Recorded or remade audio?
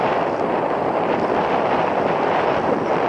recorded